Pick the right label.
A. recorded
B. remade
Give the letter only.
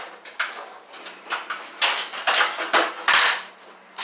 A